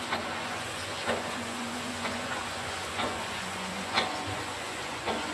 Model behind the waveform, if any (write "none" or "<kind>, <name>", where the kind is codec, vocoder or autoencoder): vocoder, Vocos